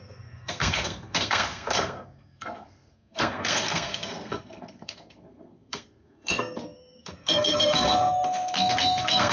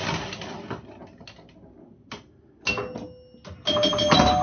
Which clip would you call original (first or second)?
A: second